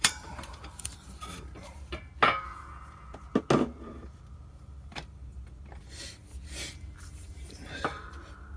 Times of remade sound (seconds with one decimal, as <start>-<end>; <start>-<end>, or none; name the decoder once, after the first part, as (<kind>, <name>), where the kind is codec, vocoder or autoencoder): 0.0-2.1 (vocoder, BigVGAN v2); 4.5-5.3; 5.9-8.6